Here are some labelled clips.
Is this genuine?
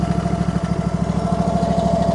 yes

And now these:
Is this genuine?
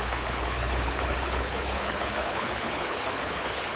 no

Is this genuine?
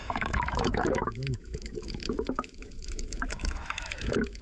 no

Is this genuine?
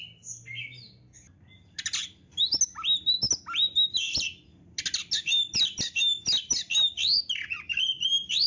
yes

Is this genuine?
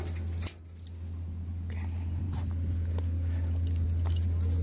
yes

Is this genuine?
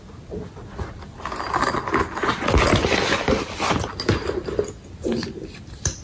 yes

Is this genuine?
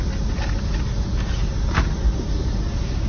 yes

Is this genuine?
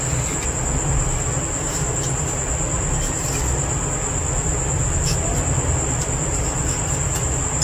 yes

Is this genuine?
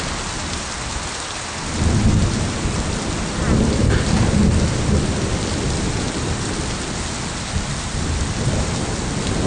yes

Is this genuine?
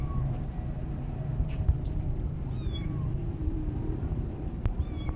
no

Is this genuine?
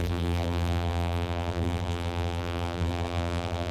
no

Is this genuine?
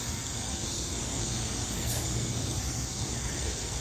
no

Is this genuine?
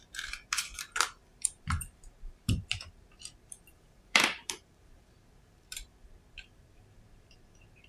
no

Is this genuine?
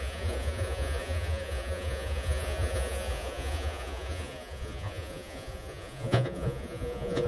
no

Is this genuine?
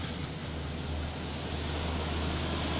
yes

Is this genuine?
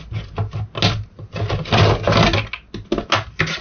yes